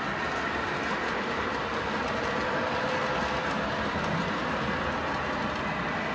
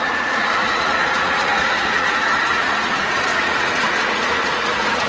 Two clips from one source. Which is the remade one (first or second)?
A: second